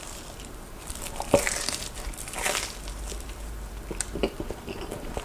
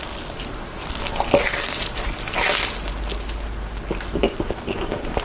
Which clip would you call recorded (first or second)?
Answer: second